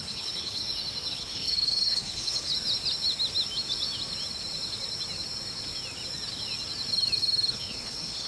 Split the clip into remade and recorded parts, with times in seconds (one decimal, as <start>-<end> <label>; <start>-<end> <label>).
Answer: 0.0-0.6 remade; 0.6-1.1 recorded; 1.1-2.5 remade; 2.5-7.5 recorded; 7.5-8.3 remade